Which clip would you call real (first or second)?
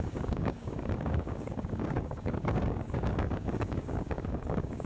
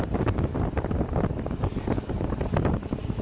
second